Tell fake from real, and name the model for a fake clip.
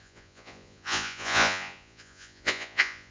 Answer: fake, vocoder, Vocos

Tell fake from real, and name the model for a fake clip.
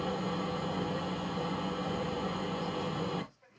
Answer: fake, vocoder, Vocos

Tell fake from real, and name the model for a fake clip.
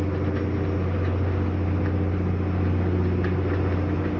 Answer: real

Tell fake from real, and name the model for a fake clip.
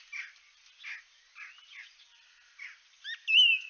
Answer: real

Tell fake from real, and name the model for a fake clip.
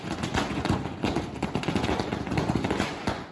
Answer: fake, vocoder, Vocos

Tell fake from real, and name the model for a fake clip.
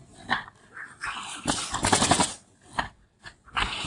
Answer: real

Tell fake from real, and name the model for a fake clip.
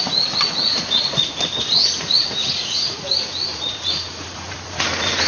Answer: fake, vocoder, Vocos